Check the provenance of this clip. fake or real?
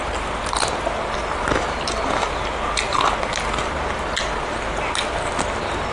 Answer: real